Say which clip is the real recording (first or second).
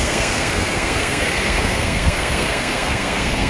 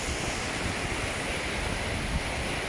second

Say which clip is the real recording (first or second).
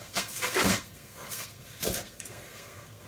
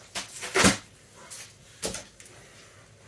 second